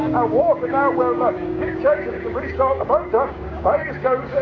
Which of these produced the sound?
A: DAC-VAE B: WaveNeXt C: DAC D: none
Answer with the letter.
C